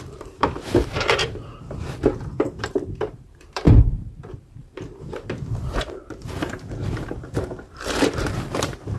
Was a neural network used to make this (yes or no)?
yes